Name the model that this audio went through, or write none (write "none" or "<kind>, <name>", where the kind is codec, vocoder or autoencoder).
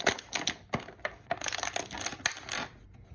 none